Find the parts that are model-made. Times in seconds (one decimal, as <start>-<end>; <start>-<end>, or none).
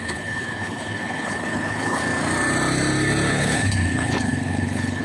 0.0-2.0; 3.3-5.0